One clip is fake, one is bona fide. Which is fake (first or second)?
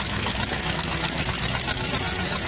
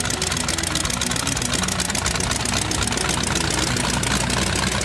first